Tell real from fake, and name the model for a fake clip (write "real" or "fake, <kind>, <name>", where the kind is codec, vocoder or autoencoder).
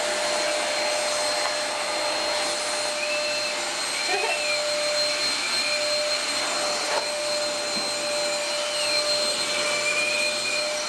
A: real